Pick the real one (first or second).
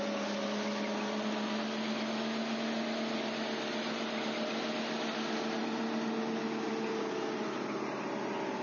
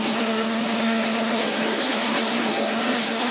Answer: first